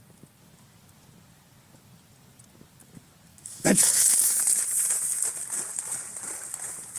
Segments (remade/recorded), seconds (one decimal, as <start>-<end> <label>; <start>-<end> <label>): 0.0-3.3 recorded; 3.3-4.4 remade; 4.4-7.0 recorded